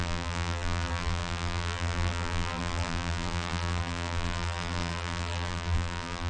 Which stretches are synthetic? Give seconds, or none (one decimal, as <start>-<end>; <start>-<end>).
0.0-6.3